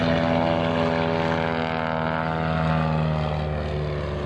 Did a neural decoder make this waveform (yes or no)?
no